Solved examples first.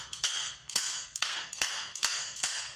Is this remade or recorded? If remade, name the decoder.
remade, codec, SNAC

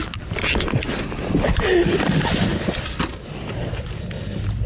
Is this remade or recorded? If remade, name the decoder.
recorded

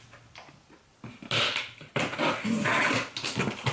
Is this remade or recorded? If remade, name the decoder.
recorded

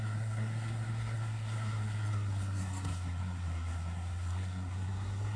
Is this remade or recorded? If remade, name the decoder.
remade, codec, SNAC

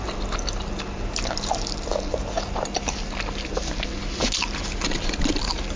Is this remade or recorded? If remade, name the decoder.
recorded